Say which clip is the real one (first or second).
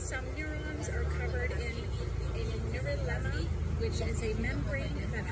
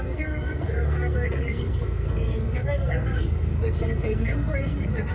first